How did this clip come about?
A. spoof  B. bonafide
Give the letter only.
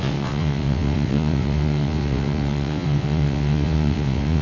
A